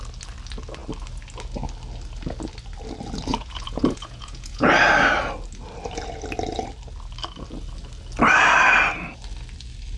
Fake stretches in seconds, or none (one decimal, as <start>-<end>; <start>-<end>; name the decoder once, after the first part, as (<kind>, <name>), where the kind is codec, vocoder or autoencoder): 3.3-4.7 (vocoder, Vocos)